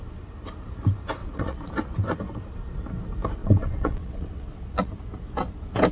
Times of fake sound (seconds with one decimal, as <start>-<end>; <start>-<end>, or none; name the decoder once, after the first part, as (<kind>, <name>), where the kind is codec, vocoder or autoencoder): 1.2-1.7 (vocoder, WaveNeXt); 3.4-4.9